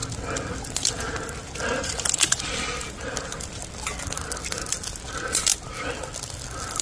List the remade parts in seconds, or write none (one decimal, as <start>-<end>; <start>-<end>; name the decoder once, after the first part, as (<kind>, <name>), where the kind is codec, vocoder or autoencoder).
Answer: none